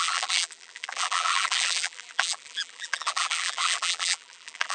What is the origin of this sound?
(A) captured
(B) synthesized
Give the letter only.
B